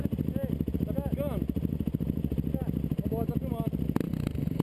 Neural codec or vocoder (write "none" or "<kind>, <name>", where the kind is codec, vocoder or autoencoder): none